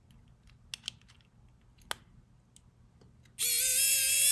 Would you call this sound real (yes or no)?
yes